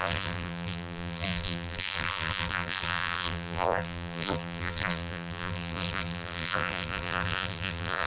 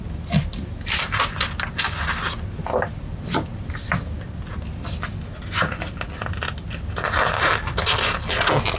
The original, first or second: second